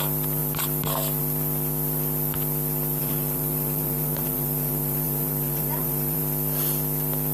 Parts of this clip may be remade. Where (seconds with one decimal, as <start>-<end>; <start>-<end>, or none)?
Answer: 3.0-6.2